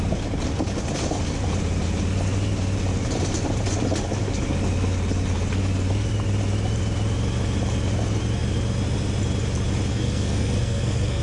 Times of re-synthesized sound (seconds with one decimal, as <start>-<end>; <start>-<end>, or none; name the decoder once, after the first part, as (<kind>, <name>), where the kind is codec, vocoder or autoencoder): 9.9-11.2 (codec, SNAC)

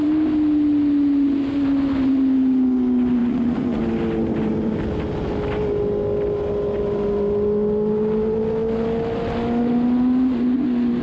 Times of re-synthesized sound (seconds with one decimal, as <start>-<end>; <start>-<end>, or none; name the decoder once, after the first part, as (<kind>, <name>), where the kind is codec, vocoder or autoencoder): 3.2-3.8 (vocoder, Vocos)

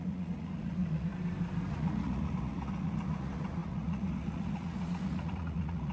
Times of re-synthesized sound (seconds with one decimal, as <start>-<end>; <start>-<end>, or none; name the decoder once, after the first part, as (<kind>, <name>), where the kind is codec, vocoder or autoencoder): 0.0-1.1 (vocoder, Vocos); 1.7-5.9

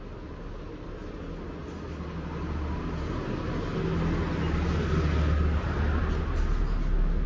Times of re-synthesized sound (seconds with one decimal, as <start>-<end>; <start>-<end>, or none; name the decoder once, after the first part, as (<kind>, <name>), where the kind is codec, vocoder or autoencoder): none

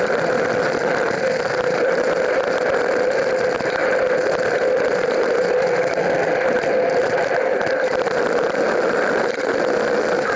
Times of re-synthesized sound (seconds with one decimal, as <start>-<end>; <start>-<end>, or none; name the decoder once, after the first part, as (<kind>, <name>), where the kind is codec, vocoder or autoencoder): 0.0-3.8 (vocoder, BigVGAN v2); 7.0-10.4

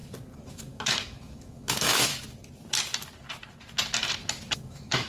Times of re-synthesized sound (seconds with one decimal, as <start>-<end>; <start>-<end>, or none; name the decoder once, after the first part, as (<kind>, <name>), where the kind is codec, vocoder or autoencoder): 0.5-2.1 (autoencoder, DAC-VAE); 4.5-5.1

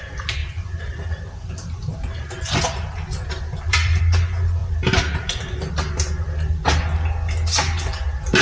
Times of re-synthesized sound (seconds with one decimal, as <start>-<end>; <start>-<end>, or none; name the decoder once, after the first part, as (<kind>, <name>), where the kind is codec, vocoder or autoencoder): 0.4-4.0 (vocoder, BigVGAN v2)

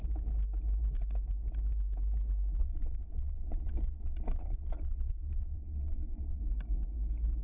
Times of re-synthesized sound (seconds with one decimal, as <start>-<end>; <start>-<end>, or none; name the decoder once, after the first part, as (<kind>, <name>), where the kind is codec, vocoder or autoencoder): 2.6-6.4 (vocoder, WaveNeXt)